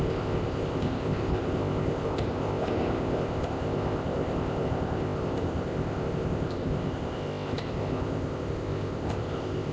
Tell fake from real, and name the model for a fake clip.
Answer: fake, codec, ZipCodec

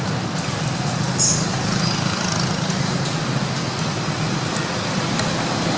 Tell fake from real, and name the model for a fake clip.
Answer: real